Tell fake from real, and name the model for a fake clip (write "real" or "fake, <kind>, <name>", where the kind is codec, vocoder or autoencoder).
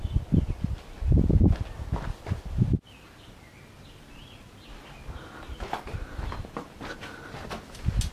real